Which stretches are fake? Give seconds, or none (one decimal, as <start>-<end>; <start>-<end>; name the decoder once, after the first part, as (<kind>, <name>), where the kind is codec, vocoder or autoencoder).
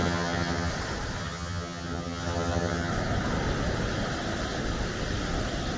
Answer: 0.0-0.7 (vocoder, HiFi-GAN); 1.2-2.9